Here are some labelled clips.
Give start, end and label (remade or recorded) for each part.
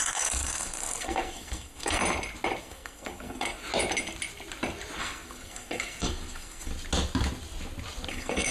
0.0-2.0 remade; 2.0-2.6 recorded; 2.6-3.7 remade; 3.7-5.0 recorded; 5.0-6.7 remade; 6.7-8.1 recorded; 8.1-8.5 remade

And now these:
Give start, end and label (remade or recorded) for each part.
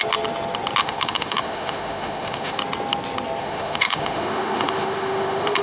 0.0-0.8 recorded; 0.8-2.6 remade; 2.6-3.4 recorded; 3.4-5.6 remade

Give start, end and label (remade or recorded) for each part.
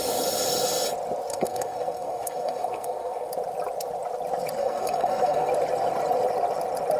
0.0-1.3 recorded; 1.3-3.3 remade; 3.3-4.6 recorded; 4.6-5.5 remade; 5.5-7.0 recorded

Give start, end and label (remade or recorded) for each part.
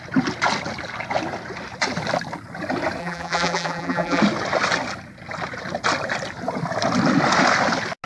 0.0-3.0 recorded; 3.0-4.2 remade; 4.2-8.1 recorded